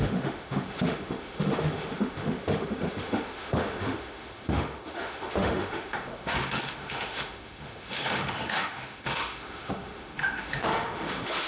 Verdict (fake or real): fake